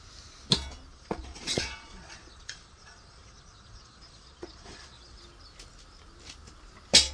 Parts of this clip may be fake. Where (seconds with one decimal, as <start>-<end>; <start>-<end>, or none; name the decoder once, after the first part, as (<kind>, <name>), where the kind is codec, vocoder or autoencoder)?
0.9-5.2 (vocoder, Vocos)